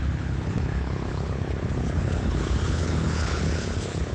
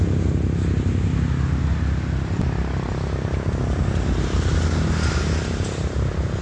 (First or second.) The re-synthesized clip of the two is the first